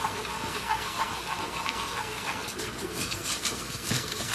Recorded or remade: remade